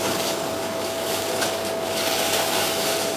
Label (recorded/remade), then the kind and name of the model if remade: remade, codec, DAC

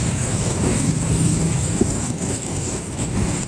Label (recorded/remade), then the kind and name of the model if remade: remade, codec, DAC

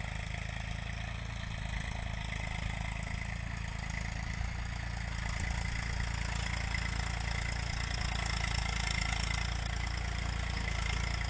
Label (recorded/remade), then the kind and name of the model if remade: recorded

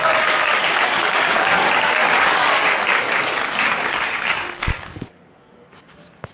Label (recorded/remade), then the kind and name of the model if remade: remade, codec, DAC